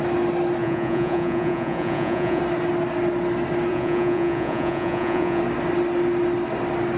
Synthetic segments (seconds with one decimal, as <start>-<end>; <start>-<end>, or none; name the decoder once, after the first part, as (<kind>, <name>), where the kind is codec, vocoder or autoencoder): 0.6-2.4 (vocoder, Vocos); 3.7-5.4